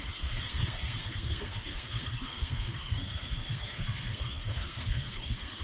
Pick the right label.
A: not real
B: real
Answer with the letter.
A